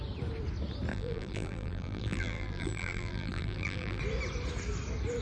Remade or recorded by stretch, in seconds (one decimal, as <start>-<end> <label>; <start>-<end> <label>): 0.0-0.9 recorded; 0.9-4.0 remade; 4.0-5.2 recorded